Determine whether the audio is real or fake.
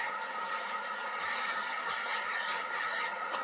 fake